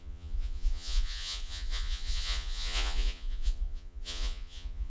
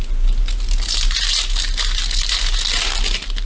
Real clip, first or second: second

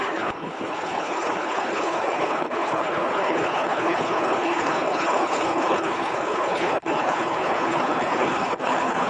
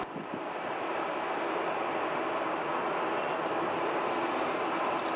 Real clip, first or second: second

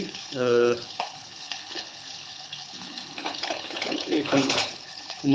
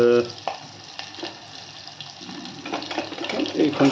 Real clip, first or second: second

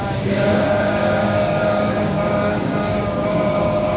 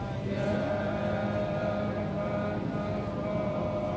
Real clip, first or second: second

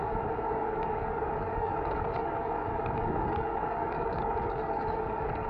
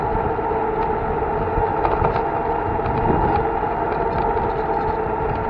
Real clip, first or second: second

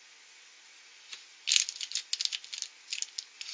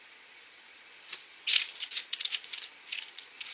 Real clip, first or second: first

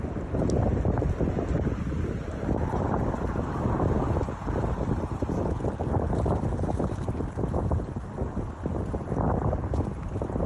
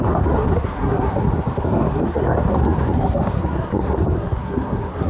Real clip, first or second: first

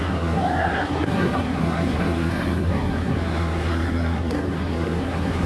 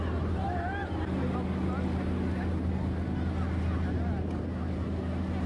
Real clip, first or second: second